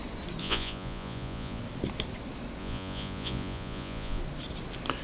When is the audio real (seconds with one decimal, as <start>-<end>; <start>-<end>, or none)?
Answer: 0.0-0.4; 1.6-2.6; 4.2-5.0